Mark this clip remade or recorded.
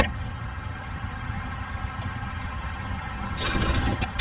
remade